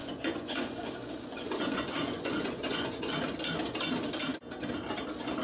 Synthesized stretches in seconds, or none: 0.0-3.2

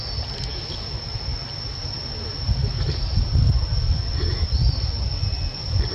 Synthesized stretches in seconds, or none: none

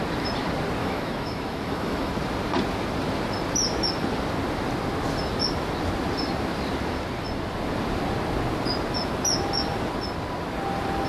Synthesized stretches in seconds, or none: 0.8-2.1

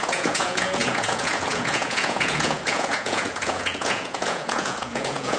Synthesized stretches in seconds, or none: 0.0-5.4

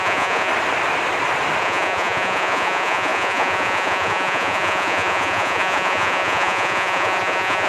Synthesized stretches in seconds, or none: 0.0-0.5; 1.6-7.7

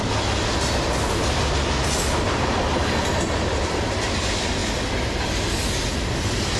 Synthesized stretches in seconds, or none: none

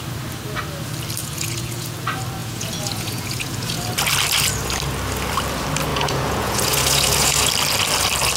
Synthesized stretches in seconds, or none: 1.2-2.0; 2.4-3.8; 5.9-7.5

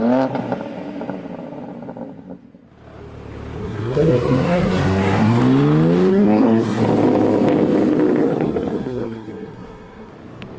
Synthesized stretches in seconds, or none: 3.6-5.4; 6.1-6.8; 8.2-10.1